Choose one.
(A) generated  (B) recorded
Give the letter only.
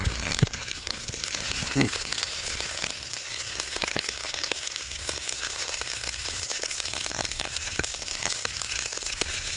A